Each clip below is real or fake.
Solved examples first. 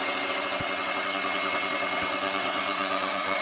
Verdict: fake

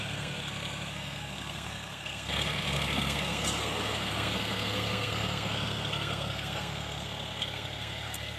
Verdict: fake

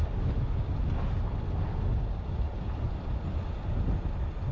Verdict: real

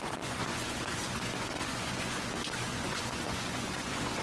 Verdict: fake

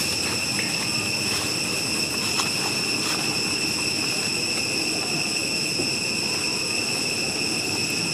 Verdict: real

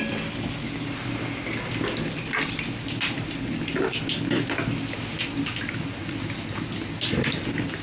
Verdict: real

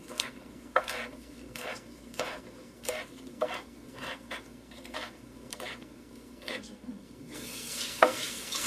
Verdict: fake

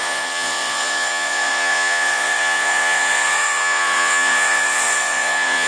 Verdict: fake